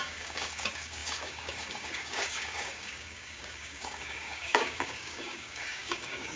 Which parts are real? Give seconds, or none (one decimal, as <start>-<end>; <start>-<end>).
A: none